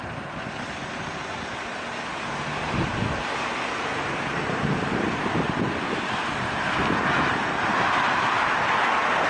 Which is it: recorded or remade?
recorded